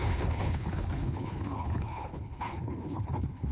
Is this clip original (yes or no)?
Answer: no